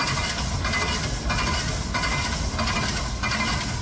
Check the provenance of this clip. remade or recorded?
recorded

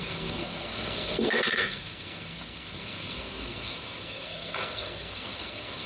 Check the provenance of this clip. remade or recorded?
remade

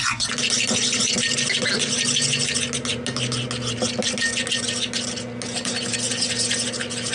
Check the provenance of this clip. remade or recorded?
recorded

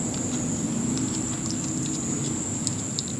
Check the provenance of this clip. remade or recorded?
recorded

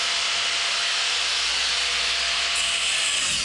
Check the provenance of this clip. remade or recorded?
recorded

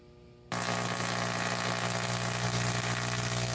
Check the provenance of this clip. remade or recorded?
recorded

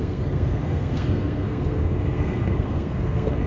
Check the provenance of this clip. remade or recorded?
remade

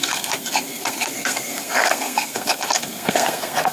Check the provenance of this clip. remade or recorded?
remade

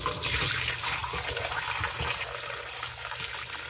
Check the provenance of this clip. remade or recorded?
recorded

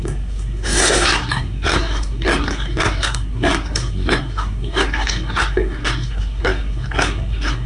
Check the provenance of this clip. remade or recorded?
remade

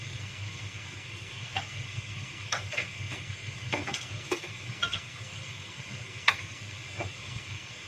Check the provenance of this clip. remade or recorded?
remade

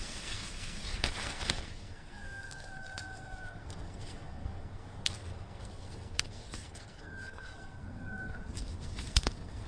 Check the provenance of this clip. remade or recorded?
remade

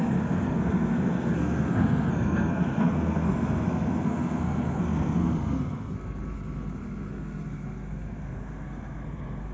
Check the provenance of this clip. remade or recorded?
remade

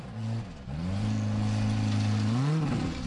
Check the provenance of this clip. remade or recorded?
recorded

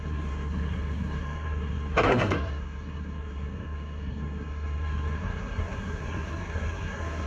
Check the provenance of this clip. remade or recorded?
remade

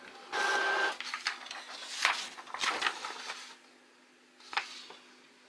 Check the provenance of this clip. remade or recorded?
recorded